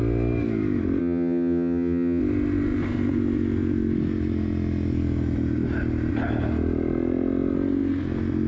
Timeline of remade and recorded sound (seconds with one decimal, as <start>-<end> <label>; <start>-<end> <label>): 0.0-1.0 recorded; 1.0-2.2 remade; 2.2-8.5 recorded